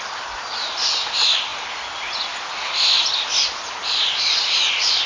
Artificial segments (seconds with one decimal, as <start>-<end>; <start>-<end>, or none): none